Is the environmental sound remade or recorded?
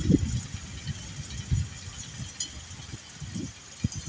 recorded